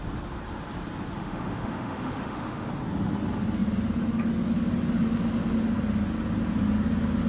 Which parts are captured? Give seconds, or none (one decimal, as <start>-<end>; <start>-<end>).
0.0-1.2; 2.7-7.3